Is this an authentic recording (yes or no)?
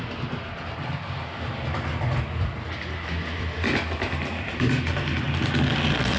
yes